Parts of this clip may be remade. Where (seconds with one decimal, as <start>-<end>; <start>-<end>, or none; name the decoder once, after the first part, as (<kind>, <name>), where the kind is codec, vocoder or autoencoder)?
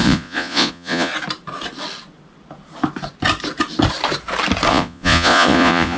0.0-1.1 (vocoder, Vocos); 4.7-6.0